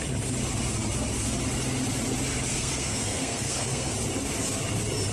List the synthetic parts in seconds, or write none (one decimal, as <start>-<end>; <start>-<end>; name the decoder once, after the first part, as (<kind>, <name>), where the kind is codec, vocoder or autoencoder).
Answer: 2.5-3.9 (codec, SNAC)